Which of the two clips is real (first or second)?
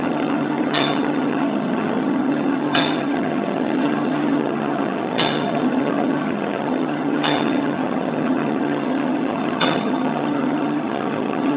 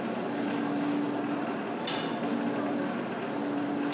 second